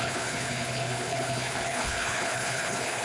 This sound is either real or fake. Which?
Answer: fake